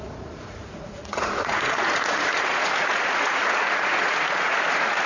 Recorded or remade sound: remade